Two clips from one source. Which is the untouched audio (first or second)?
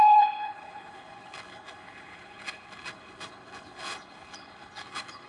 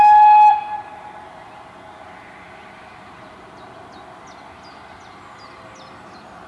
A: second